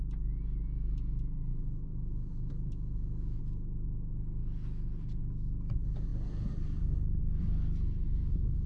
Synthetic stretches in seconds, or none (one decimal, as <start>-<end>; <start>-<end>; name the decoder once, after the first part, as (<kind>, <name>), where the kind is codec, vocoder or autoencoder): 1.5-3.4 (autoencoder, DAC-VAE)